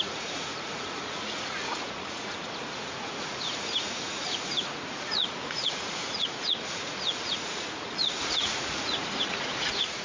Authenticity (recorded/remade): remade